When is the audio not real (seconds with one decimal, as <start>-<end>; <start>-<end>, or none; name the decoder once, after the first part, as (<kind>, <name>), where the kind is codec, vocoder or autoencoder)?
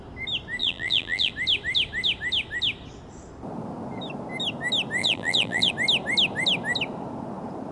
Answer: 0.6-1.3 (vocoder, BigVGAN v2); 5.0-5.7